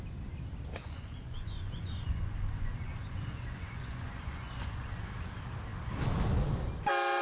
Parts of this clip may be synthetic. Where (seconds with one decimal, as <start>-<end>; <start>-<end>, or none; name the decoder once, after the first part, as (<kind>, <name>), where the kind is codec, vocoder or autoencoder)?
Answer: 0.7-5.0 (vocoder, Vocos)